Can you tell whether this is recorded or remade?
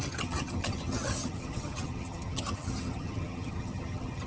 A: remade